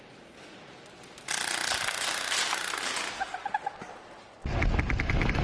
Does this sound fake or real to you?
real